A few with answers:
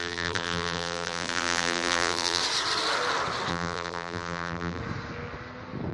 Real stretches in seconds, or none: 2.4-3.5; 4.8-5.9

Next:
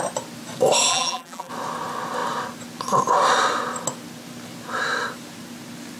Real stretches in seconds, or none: 0.0-0.9; 1.5-6.0

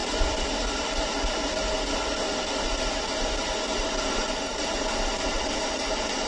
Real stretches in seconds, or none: 0.0-0.7; 2.7-3.8

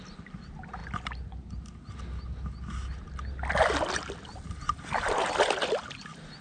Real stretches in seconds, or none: 0.0-6.4

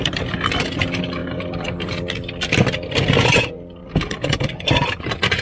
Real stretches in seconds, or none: 0.0-1.2; 2.1-3.8; 5.0-5.4

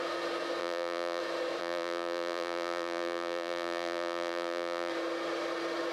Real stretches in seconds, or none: 0.0-0.6; 1.2-1.6; 4.9-5.9

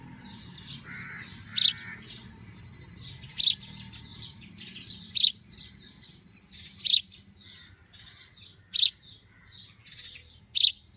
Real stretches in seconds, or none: 0.0-4.1; 5.7-11.0